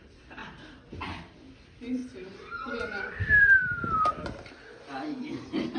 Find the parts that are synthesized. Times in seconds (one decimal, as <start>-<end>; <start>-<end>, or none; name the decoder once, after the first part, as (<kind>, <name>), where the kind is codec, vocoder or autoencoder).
0.0-0.4 (vocoder, BigVGAN v2); 1.0-2.0; 2.7-4.1